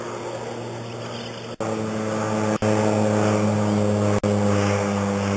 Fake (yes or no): no